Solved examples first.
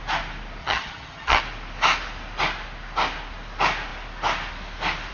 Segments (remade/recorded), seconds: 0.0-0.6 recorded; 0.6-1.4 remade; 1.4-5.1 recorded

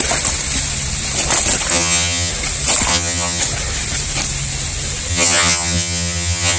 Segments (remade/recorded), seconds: 0.0-1.7 recorded; 1.7-2.3 remade; 2.3-2.9 recorded; 2.9-3.4 remade; 3.4-5.1 recorded; 5.1-6.6 remade

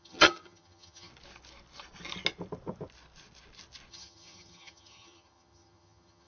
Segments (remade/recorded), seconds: 0.0-1.1 remade; 1.1-3.9 recorded; 3.9-6.3 remade